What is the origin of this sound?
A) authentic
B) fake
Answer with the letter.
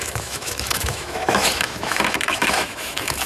B